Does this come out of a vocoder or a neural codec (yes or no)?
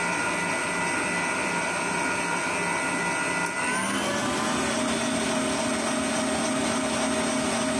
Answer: no